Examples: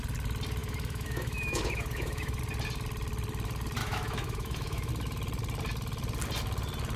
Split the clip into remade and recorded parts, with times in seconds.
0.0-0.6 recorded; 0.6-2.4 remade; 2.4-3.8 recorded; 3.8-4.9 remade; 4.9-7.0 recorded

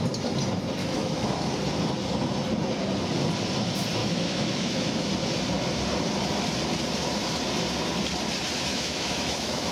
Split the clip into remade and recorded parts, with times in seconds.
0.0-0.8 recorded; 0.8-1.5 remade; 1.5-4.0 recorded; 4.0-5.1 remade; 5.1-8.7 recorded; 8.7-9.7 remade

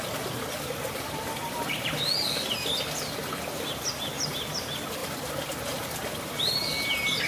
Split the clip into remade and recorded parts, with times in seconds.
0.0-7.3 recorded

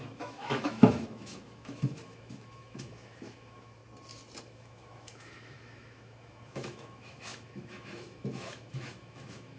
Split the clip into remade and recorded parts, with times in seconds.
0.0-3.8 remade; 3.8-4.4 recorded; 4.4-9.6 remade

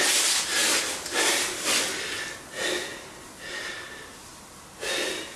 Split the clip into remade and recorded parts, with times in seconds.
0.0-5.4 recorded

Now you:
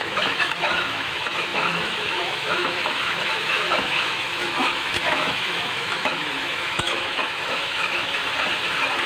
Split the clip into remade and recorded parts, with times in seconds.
0.0-8.2 remade; 8.2-9.1 recorded

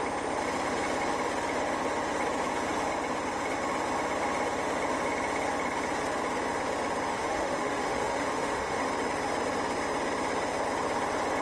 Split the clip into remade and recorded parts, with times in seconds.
0.0-7.1 recorded; 7.1-8.9 remade; 8.9-11.4 recorded